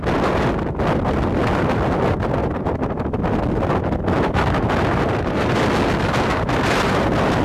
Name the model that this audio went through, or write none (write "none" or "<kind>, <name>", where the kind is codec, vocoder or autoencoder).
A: none